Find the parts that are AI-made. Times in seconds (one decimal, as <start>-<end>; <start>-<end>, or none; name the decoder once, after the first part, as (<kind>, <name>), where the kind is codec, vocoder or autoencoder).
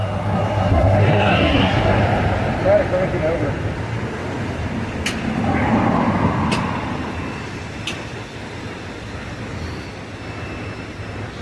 0.0-2.0 (codec, SNAC)